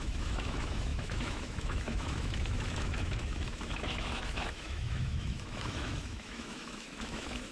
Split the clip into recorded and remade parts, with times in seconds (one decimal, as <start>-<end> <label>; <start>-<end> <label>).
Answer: 0.0-7.5 remade

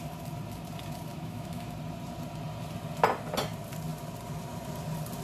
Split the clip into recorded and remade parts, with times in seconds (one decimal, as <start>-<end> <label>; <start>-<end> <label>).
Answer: 0.0-1.1 recorded; 1.1-1.7 remade; 1.7-5.2 recorded

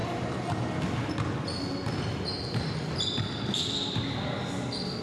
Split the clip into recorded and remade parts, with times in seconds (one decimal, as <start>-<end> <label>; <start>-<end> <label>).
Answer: 0.0-5.0 recorded